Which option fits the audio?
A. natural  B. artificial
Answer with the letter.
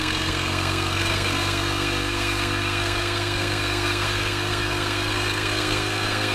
B